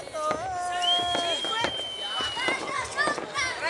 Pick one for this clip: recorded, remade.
recorded